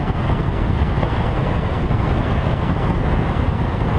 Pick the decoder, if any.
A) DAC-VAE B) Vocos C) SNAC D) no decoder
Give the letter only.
C